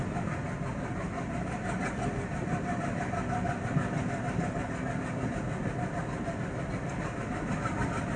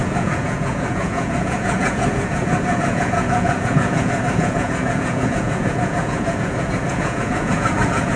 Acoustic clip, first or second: first